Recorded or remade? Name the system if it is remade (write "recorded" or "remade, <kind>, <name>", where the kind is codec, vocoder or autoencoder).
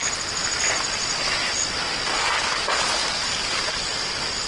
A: recorded